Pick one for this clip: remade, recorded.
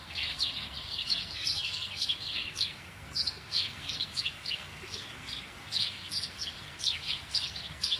remade